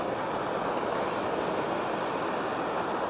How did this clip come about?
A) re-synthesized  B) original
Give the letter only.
B